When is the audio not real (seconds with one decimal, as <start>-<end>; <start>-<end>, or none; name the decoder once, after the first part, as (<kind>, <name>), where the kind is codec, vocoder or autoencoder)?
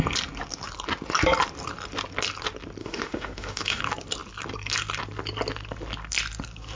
2.8-3.8 (autoencoder, DAC-VAE)